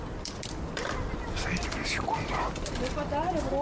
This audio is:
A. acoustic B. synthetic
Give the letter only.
A